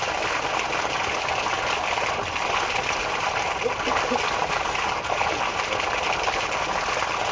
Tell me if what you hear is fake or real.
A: real